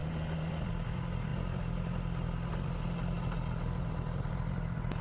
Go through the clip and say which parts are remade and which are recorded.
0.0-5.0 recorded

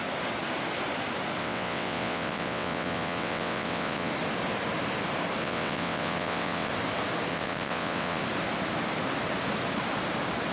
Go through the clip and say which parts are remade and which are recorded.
0.0-1.4 recorded; 1.4-4.1 remade; 4.1-5.4 recorded; 5.4-6.7 remade; 6.7-7.3 recorded; 7.3-8.2 remade; 8.2-10.5 recorded

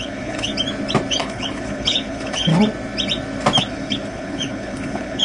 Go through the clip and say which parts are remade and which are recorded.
0.0-0.5 remade; 0.5-1.1 recorded; 1.1-2.5 remade; 2.5-3.6 recorded; 3.6-5.2 remade

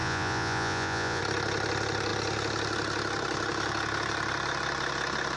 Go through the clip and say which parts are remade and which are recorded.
0.0-1.2 remade; 1.2-5.4 recorded

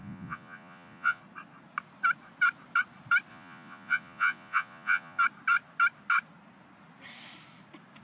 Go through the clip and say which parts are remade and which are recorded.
0.0-1.2 remade; 1.2-3.3 recorded; 3.3-5.2 remade; 5.2-8.0 recorded